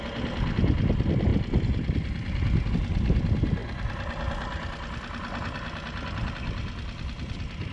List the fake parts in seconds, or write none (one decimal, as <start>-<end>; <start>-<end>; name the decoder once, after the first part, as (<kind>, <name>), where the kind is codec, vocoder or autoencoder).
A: none